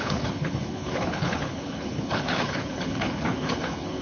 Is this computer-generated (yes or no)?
yes